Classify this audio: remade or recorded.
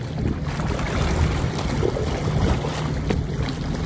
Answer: recorded